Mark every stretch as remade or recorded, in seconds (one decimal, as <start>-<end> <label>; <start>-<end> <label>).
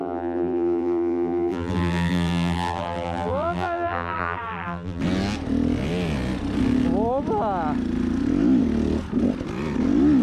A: 0.0-5.0 remade; 5.0-10.2 recorded